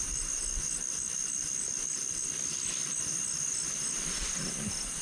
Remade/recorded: recorded